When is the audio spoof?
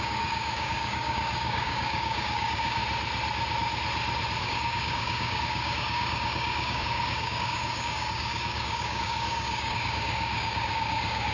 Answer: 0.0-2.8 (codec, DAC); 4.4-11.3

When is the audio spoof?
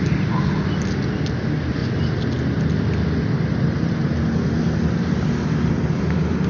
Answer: none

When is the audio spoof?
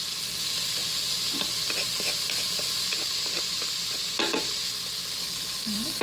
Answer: 5.2-6.0 (codec, DAC)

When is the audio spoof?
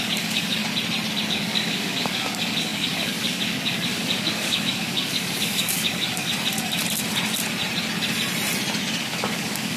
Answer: 0.0-0.6 (codec, DAC); 1.3-6.3; 9.0-9.8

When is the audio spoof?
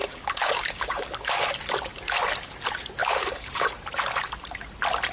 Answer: 0.0-1.5 (codec, DAC); 3.0-3.7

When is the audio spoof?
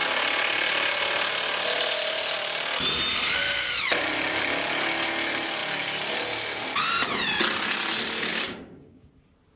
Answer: 8.3-9.1 (codec, DAC)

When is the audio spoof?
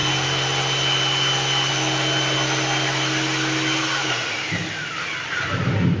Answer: none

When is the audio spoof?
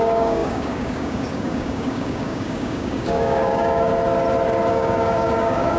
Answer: 0.0-3.9 (codec, DAC); 4.7-5.8